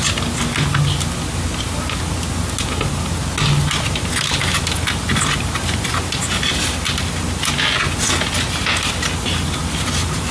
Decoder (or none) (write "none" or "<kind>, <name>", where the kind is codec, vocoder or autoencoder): none